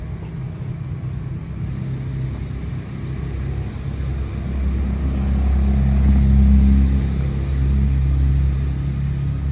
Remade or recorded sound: recorded